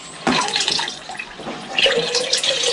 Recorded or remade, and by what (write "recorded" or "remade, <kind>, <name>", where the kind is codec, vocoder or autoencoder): remade, vocoder, Vocos